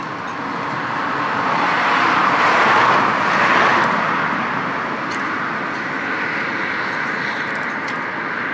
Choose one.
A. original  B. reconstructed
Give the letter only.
A